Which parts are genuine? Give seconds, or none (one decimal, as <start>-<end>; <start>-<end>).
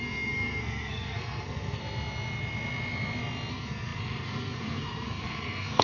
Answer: 1.8-3.5